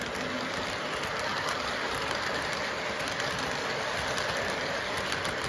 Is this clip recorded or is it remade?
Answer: recorded